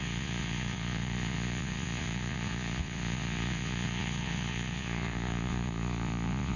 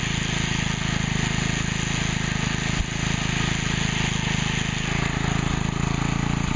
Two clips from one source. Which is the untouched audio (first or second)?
second